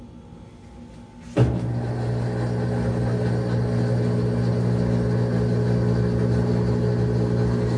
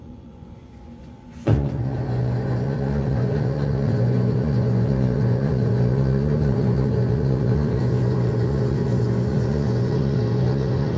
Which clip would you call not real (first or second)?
second